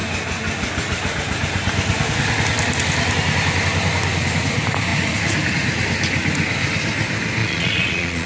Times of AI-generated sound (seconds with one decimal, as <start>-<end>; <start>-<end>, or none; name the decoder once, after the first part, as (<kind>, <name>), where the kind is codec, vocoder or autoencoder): 7.4-8.3 (vocoder, Vocos)

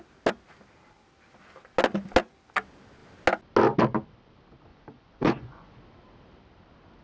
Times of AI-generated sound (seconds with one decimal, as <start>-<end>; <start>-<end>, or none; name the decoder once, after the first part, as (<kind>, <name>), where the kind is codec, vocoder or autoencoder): 4.7-5.8 (vocoder, Vocos)

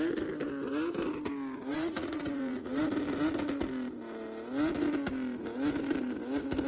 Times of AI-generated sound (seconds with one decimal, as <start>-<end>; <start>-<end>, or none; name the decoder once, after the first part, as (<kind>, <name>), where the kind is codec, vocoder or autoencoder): 1.7-2.8 (vocoder, Vocos)